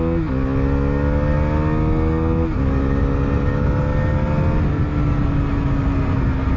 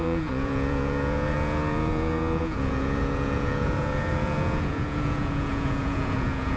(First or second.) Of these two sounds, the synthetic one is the second